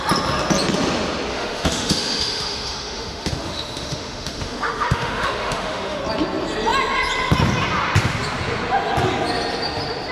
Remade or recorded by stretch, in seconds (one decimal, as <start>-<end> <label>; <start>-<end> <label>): 0.0-1.3 recorded; 1.3-6.0 remade; 6.0-10.1 recorded